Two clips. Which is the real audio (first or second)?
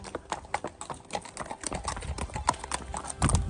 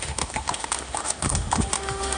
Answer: first